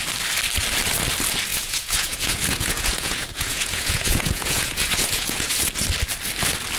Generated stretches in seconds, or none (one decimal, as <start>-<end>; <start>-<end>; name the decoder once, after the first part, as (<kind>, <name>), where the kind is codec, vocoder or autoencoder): 1.5-5.5 (vocoder, Vocos)